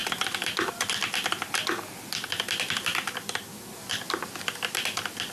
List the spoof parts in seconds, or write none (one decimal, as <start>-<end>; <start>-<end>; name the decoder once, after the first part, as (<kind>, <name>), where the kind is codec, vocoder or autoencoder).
none